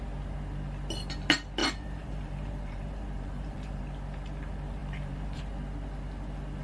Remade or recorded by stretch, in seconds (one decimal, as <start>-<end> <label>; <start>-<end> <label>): 0.0-1.6 recorded; 1.6-3.8 remade; 3.8-4.8 recorded; 4.8-5.4 remade; 5.4-6.6 recorded